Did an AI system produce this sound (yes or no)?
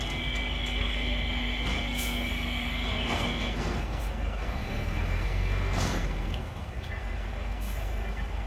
yes